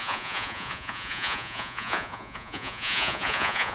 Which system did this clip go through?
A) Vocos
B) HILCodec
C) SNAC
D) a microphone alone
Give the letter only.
A